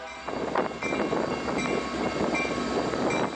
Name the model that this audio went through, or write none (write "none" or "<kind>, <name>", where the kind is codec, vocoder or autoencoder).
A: none